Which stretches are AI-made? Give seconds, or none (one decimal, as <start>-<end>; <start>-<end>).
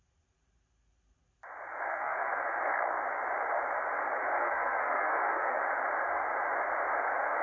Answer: 1.9-2.4; 4.4-5.6